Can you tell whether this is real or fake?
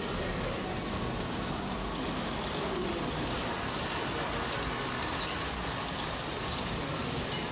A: real